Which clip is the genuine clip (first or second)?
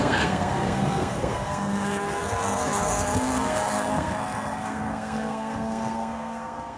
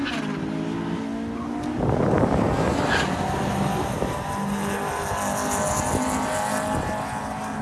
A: second